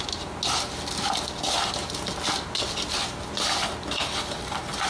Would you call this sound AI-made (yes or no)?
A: no